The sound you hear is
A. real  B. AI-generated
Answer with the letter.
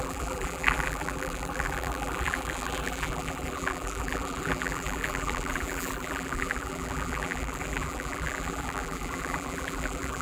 B